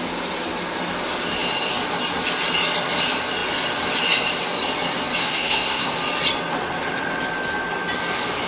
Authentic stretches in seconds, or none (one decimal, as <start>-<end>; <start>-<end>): 0.0-5.2; 5.9-8.5